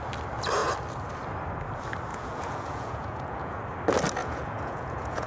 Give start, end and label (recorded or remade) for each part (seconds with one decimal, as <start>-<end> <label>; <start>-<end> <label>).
0.0-2.1 recorded; 2.1-3.6 remade; 3.6-4.2 recorded; 4.2-5.3 remade